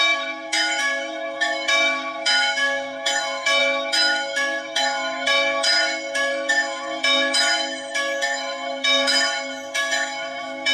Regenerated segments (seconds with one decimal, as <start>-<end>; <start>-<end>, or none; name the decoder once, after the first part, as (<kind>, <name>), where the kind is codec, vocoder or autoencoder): 0.0-10.7 (autoencoder, DAC-VAE)